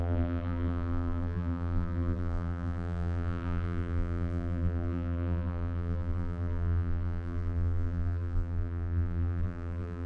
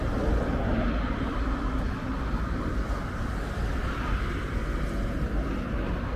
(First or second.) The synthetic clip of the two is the first